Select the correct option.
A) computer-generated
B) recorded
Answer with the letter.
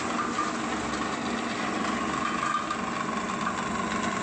B